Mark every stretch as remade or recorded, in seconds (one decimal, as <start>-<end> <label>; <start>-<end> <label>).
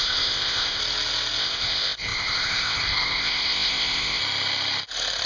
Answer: 0.0-0.8 remade; 0.8-1.4 recorded; 1.4-4.2 remade; 4.2-5.3 recorded